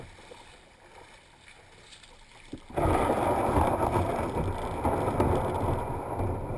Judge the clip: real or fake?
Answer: real